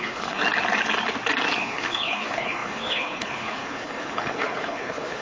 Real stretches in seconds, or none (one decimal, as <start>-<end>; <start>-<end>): 0.4-1.6